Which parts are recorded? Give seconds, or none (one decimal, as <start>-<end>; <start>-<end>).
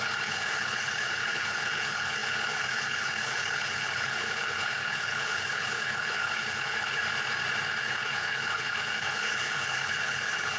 7.0-7.8